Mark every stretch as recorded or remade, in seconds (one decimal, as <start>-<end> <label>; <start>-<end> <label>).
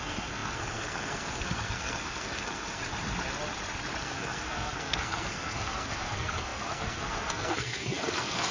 0.0-2.8 remade; 2.8-4.0 recorded; 4.0-8.5 remade